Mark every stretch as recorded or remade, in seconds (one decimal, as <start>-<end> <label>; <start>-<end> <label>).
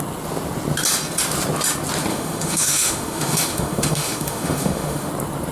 0.0-2.1 recorded; 2.1-5.1 remade; 5.1-5.5 recorded